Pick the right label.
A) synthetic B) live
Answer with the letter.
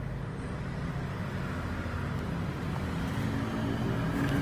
B